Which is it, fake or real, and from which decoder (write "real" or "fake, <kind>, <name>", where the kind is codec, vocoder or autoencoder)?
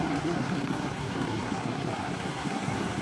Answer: fake, codec, SNAC